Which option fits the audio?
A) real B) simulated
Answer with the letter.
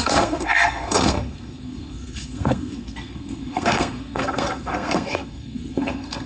B